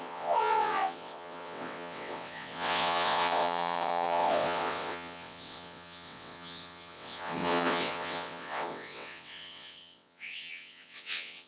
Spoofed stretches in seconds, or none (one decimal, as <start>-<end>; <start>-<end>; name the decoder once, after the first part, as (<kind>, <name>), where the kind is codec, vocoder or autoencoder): 0.0-11.5 (vocoder, WaveNeXt)